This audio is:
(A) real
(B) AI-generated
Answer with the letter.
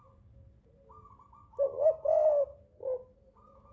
A